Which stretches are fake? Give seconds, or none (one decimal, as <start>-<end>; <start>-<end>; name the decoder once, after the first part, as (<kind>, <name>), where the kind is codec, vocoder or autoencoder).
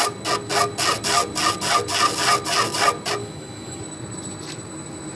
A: 3.2-3.8 (autoencoder, DAC-VAE)